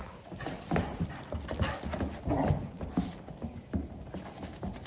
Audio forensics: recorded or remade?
recorded